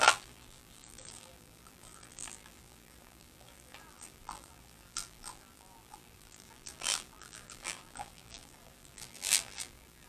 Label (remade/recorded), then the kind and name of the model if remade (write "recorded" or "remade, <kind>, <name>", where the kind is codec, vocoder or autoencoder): remade, vocoder, BigVGAN v2